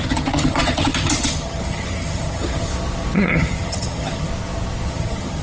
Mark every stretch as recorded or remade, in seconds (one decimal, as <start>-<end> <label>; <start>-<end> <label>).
0.0-2.7 remade; 2.7-3.3 recorded; 3.3-4.3 remade; 4.3-4.9 recorded; 4.9-5.4 remade